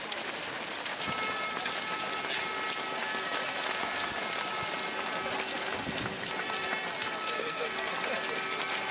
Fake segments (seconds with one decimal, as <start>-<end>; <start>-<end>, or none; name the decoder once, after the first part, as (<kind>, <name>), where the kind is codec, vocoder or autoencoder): 7.4-7.9 (codec, SNAC)